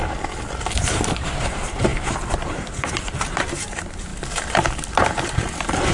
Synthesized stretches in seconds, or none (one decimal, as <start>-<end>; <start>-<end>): 0.0-5.9